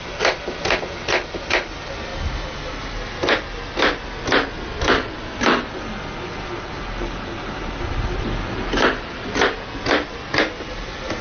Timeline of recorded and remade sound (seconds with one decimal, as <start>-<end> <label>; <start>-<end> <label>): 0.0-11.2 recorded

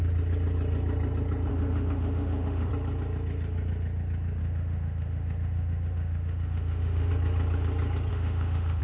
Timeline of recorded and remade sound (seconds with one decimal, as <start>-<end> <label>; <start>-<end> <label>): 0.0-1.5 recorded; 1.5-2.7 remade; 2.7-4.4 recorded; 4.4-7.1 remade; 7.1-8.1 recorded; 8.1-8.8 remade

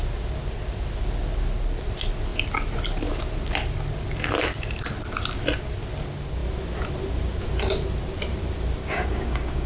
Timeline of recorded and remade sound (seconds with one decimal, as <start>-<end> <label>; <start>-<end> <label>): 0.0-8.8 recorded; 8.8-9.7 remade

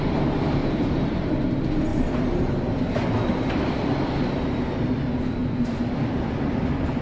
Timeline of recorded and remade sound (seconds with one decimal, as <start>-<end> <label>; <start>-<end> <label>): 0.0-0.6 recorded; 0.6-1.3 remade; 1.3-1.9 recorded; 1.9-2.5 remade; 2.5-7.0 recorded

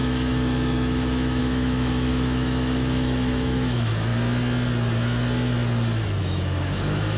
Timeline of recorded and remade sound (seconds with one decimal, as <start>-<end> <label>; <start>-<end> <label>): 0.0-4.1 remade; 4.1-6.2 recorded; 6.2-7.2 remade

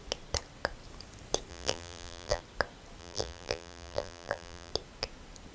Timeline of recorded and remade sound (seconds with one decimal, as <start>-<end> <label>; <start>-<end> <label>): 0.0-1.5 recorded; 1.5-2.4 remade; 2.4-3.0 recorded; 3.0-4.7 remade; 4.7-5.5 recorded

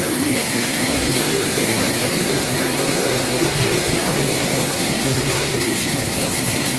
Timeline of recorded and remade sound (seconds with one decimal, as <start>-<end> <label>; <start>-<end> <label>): 0.0-6.8 remade

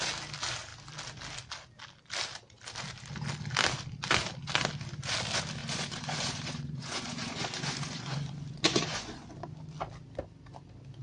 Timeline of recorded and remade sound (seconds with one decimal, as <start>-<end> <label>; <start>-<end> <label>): 0.0-5.6 recorded; 5.6-9.4 remade; 9.4-11.0 recorded